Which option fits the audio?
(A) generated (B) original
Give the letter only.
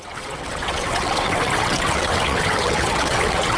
A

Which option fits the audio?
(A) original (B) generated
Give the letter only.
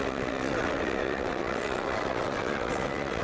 B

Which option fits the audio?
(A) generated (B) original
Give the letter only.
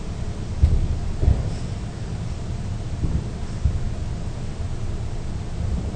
B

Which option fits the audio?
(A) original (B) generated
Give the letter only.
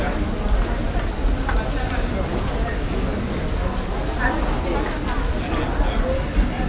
A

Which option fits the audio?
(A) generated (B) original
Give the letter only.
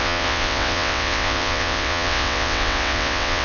A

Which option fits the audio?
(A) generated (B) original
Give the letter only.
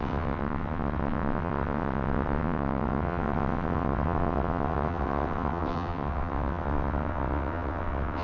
A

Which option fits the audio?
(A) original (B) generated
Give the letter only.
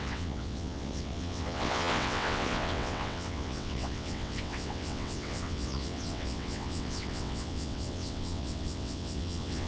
B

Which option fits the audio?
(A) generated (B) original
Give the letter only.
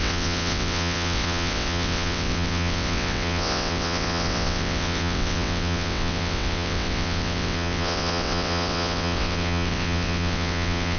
A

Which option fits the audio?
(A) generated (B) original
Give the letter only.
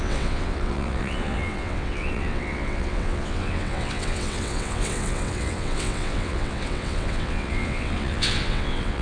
A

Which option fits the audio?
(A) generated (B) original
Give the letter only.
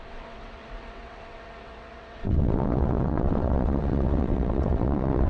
A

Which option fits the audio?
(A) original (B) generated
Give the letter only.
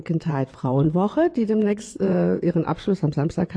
B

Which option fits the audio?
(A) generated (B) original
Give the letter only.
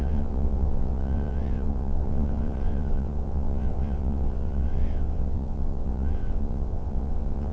A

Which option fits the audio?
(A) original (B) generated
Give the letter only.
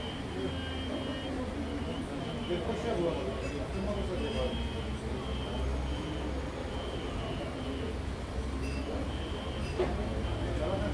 A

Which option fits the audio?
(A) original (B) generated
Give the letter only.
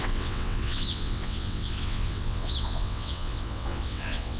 B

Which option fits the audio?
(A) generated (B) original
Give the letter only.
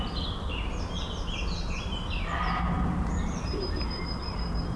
B